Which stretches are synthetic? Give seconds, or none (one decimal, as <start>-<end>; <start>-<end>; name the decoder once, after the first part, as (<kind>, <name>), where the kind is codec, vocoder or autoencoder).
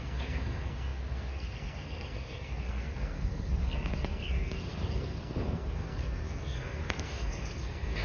0.0-8.0 (codec, SNAC)